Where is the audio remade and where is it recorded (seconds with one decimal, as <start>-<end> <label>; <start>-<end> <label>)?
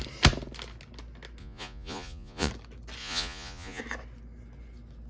0.0-1.4 recorded; 1.4-2.5 remade; 2.5-3.0 recorded; 3.0-3.8 remade; 3.8-5.1 recorded